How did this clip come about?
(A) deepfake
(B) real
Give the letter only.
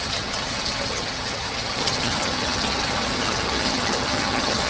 A